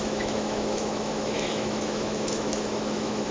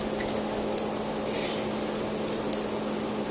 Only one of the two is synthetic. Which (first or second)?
first